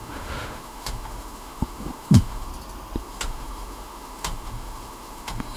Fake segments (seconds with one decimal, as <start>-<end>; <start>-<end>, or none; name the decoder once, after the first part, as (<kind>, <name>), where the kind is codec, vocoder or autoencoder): 0.0-2.5 (autoencoder, DAC-VAE); 3.0-5.6

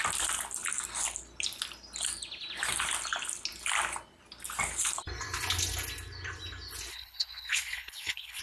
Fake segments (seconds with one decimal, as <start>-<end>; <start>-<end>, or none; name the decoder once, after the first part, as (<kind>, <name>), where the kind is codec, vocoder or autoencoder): 6.9-8.4 (codec, HILCodec)

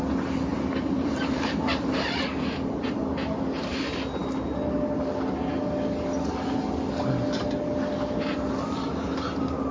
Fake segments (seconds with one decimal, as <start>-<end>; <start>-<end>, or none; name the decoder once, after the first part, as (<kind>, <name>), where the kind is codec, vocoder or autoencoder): 0.5-2.9 (vocoder, BigVGAN v2)

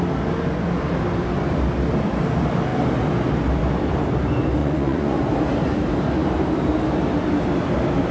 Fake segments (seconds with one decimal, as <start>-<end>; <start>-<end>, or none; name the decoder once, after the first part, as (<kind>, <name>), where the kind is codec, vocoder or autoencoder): 4.6-5.3 (vocoder, Vocos)

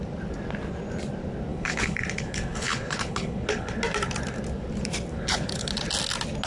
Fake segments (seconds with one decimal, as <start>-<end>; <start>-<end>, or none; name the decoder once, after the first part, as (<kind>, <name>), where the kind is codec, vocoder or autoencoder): 1.5-3.8 (codec, HILCodec); 5.1-5.7

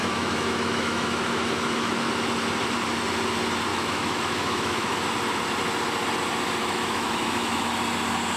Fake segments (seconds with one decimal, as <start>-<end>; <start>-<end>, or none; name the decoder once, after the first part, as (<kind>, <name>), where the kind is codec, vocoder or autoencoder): 0.0-2.1 (autoencoder, DAC-VAE); 3.7-5.1; 6.6-7.7

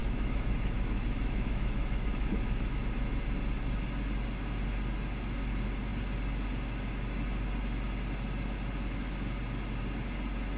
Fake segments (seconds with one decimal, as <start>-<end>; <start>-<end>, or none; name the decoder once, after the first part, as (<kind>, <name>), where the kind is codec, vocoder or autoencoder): 0.0-2.8 (autoencoder, DAC-VAE)

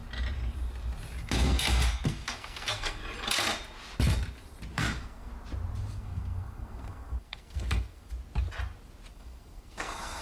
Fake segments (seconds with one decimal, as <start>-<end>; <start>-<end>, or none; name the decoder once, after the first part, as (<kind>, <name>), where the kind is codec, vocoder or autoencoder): 1.3-3.0 (codec, SNAC); 4.7-5.3; 5.9-8.1; 9.1-10.2